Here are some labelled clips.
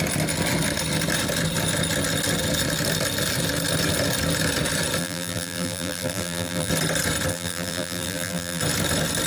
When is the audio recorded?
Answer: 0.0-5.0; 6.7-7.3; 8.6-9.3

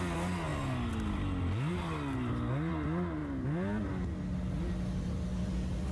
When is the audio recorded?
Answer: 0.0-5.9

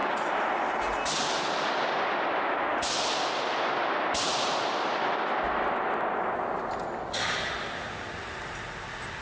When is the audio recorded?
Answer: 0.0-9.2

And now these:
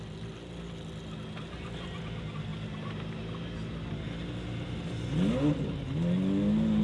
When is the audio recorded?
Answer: 0.0-6.8

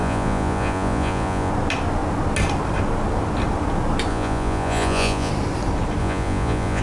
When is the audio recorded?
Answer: 1.5-4.1; 5.3-6.0

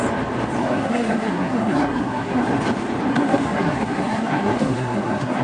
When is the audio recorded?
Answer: 0.0-0.6; 2.4-3.1

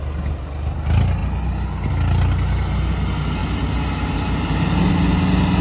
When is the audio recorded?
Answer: 0.0-3.4; 4.9-5.6

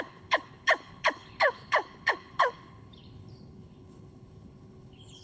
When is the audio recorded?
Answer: none